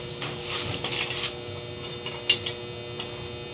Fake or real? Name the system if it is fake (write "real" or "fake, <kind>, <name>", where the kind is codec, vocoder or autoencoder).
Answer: real